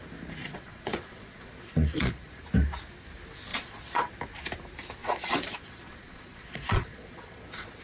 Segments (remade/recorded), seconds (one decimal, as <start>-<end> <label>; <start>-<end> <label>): 0.0-0.4 recorded; 0.4-2.4 remade; 2.4-3.5 recorded; 3.5-4.1 remade; 4.1-5.0 recorded; 5.0-7.8 remade